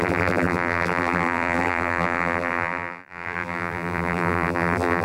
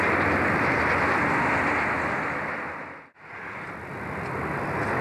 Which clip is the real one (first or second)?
second